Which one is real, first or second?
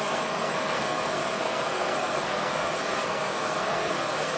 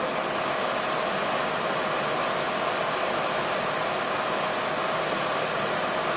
second